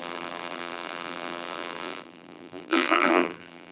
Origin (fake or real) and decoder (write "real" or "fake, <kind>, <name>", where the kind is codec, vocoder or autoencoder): fake, vocoder, BigVGAN v2